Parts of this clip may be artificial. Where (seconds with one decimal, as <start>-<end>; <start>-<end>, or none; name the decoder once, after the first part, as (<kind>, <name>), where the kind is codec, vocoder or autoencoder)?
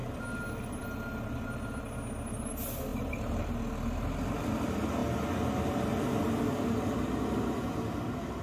none